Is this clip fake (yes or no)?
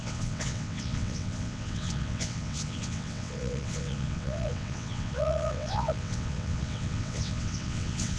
yes